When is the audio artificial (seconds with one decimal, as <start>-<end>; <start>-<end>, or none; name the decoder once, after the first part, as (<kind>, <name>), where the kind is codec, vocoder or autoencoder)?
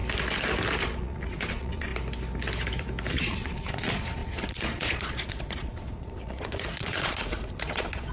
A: 0.8-1.9 (vocoder, Vocos); 3.1-8.1